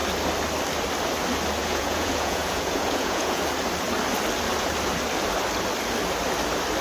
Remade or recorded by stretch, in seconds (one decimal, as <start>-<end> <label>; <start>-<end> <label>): 0.0-1.6 recorded; 1.6-3.4 remade; 3.4-6.8 recorded